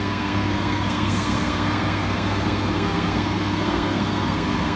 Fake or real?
fake